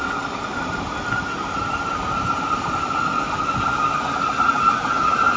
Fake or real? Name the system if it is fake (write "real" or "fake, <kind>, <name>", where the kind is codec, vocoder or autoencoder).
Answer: real